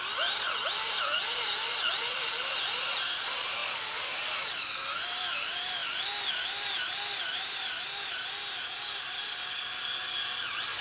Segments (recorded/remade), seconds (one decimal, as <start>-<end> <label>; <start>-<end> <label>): 0.0-10.8 recorded